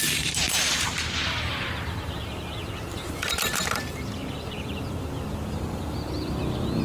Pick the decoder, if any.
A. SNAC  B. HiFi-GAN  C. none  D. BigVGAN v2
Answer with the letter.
D